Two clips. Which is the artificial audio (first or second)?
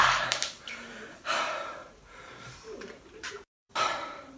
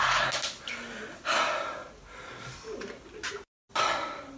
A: first